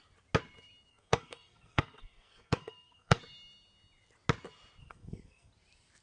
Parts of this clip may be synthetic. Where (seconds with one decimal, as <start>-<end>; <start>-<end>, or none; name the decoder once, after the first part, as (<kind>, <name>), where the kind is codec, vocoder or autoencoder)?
0.9-3.2 (codec, SNAC); 4.8-5.5